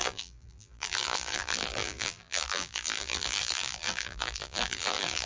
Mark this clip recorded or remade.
remade